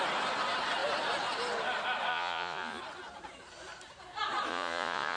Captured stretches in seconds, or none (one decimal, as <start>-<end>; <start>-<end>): 0.0-2.1; 2.8-4.5